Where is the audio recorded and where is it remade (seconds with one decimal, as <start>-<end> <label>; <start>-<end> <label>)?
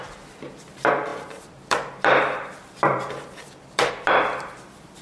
0.0-5.0 remade